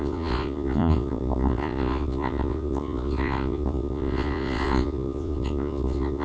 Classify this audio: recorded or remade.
remade